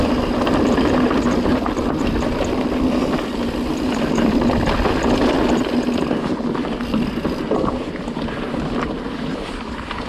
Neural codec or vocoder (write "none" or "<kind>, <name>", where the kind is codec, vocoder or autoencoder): vocoder, BigVGAN v2